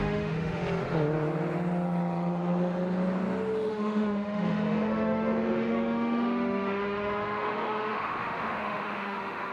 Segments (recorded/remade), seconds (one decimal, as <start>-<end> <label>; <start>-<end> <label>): 0.0-0.6 remade; 0.6-3.7 recorded; 3.7-9.5 remade